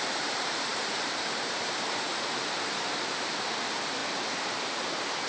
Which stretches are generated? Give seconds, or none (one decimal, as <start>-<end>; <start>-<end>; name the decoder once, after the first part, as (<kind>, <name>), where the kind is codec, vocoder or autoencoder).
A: 0.0-4.0 (vocoder, BigVGAN v2); 4.7-5.3